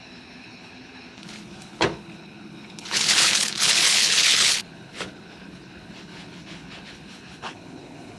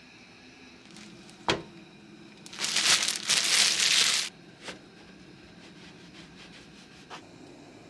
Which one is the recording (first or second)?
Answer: second